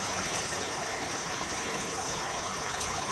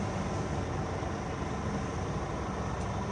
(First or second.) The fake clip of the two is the first